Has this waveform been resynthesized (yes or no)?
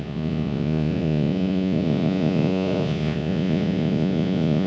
yes